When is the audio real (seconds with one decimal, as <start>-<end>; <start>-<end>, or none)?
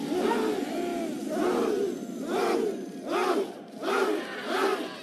0.0-3.4; 4.6-5.0